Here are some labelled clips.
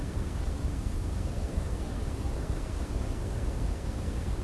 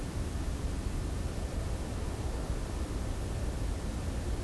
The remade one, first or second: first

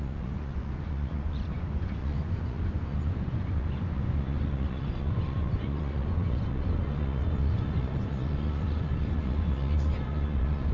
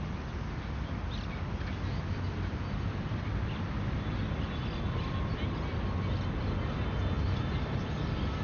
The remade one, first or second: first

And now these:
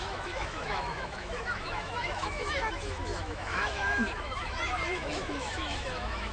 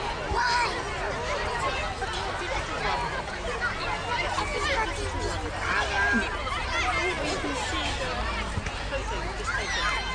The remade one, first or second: first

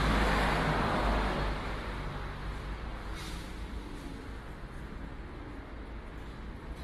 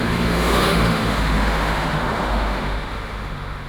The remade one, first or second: second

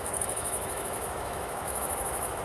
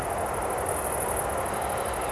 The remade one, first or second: first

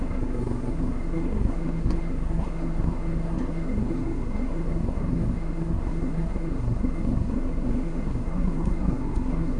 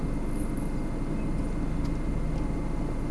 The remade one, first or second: first